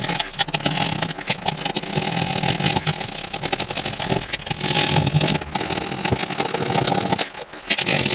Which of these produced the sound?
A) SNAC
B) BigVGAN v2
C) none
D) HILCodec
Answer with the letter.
C